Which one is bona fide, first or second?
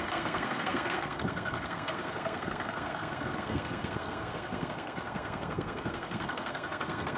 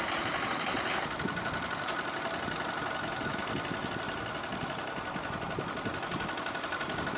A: second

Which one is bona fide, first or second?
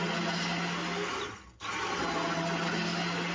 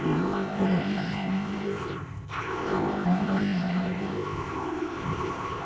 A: first